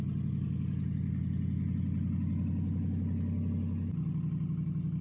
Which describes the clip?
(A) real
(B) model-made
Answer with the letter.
A